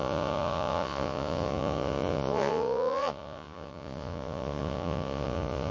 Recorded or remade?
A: remade